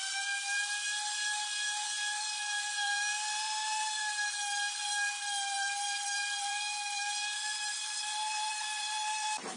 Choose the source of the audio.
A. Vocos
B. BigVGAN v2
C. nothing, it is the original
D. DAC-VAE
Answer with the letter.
B